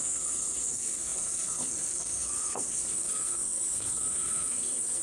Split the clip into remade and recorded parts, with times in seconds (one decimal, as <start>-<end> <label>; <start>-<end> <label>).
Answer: 0.0-5.0 remade